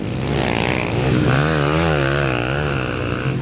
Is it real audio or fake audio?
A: real